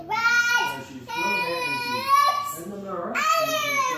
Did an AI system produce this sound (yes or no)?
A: no